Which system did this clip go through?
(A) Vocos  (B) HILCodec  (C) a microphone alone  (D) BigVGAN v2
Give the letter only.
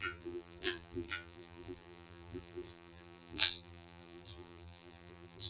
D